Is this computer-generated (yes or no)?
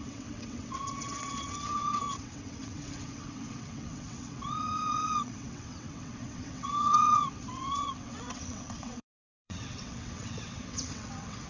yes